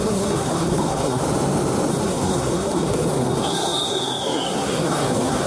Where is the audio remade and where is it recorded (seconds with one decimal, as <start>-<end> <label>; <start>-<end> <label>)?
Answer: 0.0-1.2 remade; 1.2-1.9 recorded; 1.9-5.5 remade